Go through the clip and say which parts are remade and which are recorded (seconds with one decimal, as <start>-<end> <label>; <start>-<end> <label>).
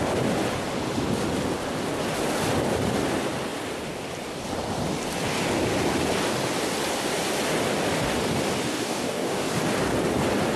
0.0-8.7 recorded; 8.7-9.5 remade; 9.5-10.6 recorded